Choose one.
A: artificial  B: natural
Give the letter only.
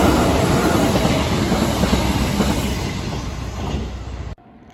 B